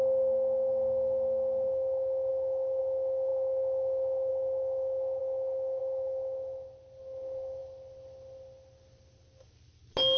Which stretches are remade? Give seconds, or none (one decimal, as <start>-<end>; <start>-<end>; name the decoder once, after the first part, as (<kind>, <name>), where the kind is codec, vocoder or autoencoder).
none